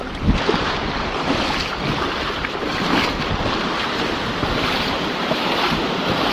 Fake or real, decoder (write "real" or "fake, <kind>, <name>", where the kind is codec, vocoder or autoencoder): real